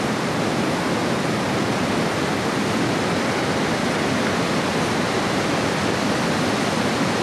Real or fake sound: real